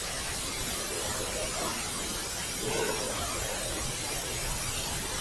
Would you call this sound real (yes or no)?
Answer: yes